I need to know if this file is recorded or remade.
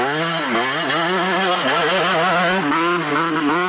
recorded